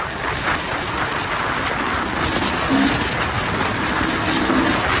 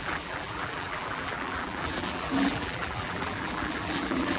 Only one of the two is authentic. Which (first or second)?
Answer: first